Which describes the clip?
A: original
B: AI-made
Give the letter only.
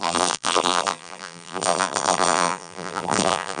B